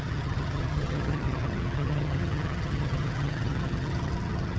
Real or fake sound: fake